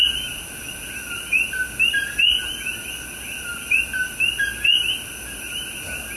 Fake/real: real